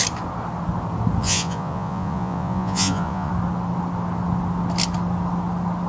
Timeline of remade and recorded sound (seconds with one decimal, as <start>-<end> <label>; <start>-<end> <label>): 0.0-1.2 recorded; 1.2-3.3 remade; 3.3-5.9 recorded